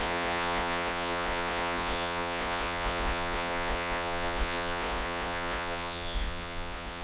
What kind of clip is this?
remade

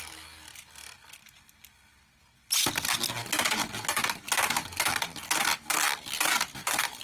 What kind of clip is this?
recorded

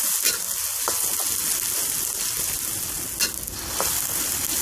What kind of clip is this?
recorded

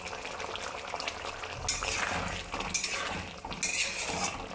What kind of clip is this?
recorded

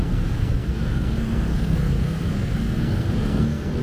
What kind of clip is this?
remade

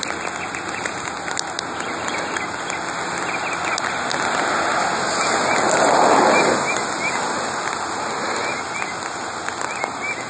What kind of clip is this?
recorded